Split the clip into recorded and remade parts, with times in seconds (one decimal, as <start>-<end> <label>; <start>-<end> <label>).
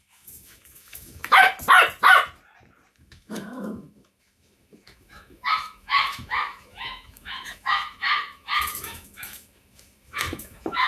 0.0-1.5 remade; 1.5-2.9 recorded; 2.9-10.9 remade